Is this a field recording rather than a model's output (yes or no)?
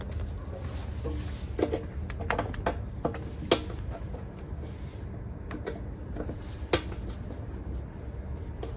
yes